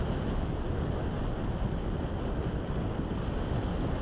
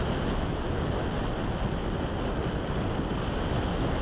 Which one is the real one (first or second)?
second